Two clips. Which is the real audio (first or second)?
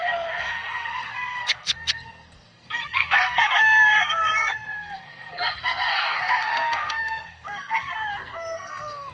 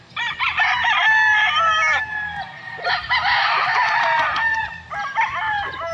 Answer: second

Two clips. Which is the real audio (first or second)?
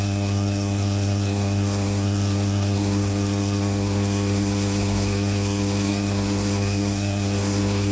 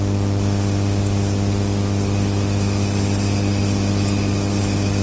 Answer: second